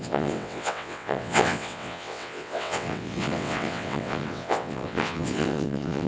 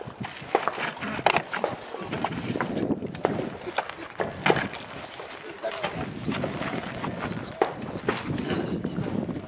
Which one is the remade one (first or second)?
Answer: first